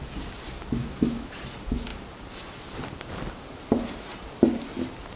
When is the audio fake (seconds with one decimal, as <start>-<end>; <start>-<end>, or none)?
0.8-1.4